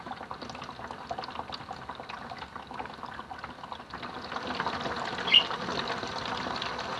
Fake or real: real